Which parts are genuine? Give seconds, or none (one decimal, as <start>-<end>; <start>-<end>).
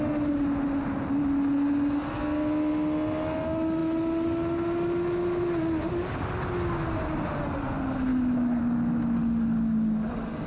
0.0-8.1; 8.6-10.5